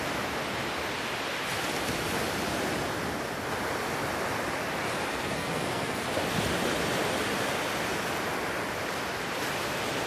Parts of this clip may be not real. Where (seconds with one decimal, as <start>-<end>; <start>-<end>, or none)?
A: 5.1-6.0